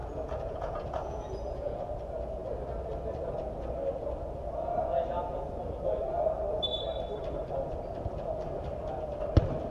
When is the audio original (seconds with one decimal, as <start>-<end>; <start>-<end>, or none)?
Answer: 1.9-9.7